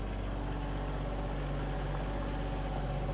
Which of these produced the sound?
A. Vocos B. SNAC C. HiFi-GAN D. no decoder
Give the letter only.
D